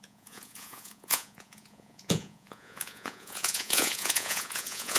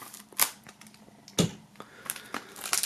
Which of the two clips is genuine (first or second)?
second